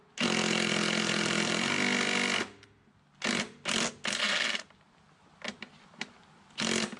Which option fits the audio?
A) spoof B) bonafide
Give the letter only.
B